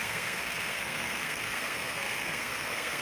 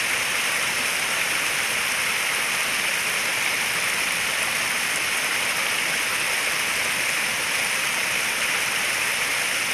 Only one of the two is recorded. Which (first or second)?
second